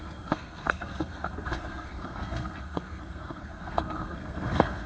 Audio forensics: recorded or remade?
remade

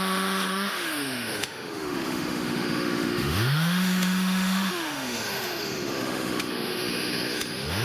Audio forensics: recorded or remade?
remade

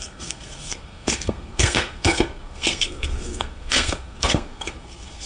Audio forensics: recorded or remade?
remade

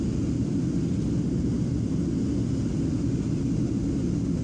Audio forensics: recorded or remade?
recorded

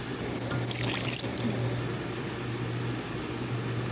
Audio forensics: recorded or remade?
recorded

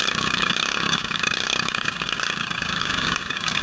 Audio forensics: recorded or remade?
remade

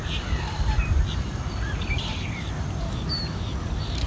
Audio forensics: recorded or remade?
remade